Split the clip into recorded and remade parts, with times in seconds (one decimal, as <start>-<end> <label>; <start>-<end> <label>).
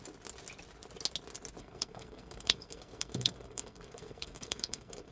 0.0-1.6 recorded; 1.6-5.1 remade